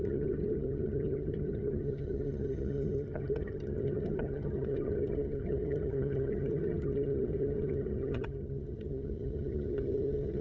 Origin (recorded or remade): remade